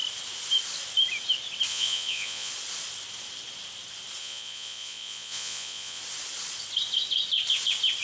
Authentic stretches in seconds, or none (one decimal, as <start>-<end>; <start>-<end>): 0.0-1.7; 2.5-4.2; 6.0-8.0